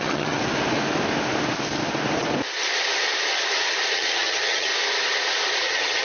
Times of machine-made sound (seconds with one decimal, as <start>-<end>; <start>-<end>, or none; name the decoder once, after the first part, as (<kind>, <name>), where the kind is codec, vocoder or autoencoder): 0.0-0.4 (vocoder, HiFi-GAN); 3.9-4.7; 5.6-6.0